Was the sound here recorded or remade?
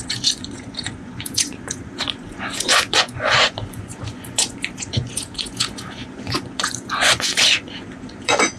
remade